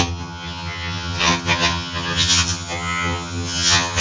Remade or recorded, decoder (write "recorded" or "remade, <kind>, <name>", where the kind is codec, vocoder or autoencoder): remade, vocoder, HiFi-GAN